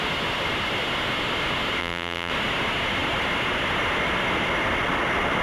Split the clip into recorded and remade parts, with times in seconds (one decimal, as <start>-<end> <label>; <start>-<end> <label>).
0.0-1.8 recorded; 1.8-2.3 remade; 2.3-5.4 recorded